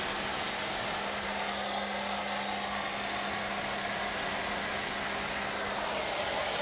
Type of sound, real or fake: real